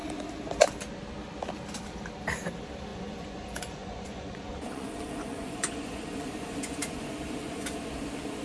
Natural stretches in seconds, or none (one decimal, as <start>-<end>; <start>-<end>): 0.0-2.9; 7.9-8.4